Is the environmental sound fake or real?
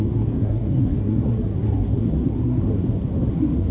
fake